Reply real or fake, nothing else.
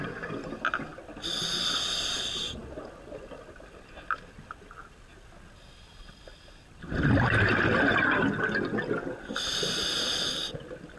real